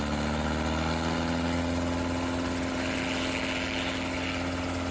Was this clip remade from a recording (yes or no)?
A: no